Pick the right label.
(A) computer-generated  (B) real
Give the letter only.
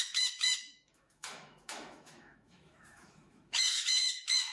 A